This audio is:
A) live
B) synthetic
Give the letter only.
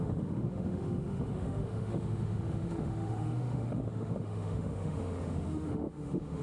B